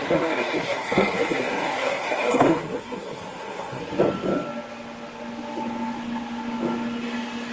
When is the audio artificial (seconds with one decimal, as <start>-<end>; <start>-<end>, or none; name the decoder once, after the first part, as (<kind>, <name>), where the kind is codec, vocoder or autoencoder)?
0.0-3.8 (codec, SNAC)